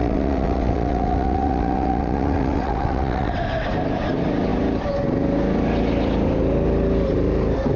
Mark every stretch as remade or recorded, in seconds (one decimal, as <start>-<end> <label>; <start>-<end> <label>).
0.0-3.3 remade; 3.3-7.8 recorded